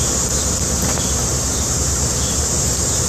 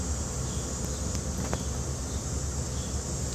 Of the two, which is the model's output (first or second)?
first